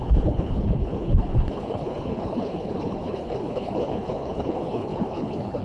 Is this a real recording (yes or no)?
no